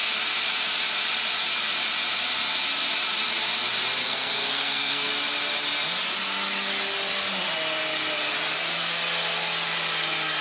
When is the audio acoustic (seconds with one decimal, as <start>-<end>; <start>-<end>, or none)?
0.0-4.0; 5.1-10.4